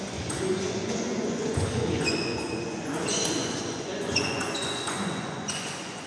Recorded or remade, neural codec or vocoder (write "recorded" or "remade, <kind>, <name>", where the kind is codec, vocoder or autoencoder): remade, vocoder, Vocos